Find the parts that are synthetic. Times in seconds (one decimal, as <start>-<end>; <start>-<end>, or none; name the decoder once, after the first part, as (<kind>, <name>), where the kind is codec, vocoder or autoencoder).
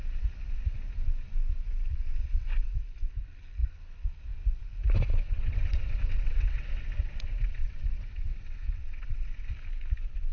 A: 2.0-2.7 (vocoder, WaveNeXt); 5.1-9.5